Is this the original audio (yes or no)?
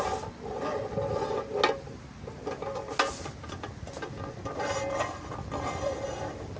yes